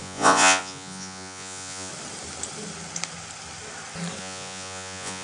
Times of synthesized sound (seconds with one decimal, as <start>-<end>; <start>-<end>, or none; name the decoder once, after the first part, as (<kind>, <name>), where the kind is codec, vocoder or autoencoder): 0.0-1.9 (vocoder, Vocos); 4.2-5.2